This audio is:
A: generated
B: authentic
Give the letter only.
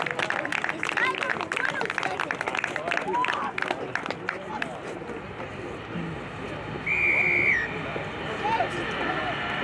B